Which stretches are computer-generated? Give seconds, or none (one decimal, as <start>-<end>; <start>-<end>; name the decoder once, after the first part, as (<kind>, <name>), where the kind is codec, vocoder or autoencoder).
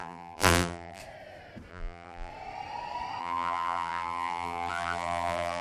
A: 0.0-1.0 (vocoder, BigVGAN v2); 1.7-2.3; 3.2-5.6